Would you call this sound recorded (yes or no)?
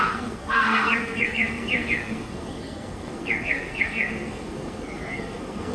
no